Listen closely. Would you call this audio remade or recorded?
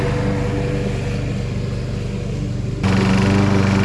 recorded